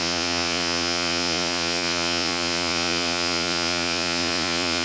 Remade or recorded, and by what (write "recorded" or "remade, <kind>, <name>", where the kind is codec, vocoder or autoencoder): remade, vocoder, Vocos